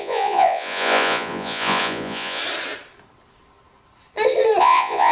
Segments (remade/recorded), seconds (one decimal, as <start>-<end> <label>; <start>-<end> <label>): 0.0-2.4 remade; 2.4-4.6 recorded; 4.6-5.1 remade